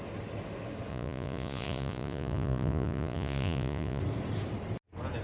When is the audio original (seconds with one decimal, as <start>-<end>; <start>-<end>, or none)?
0.0-0.9; 4.0-5.2